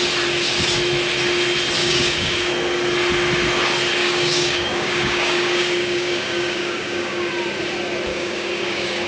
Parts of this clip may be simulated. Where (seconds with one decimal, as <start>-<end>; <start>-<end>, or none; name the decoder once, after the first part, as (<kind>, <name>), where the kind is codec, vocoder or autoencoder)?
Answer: 1.8-2.5 (codec, DAC); 4.0-7.3; 8.1-9.1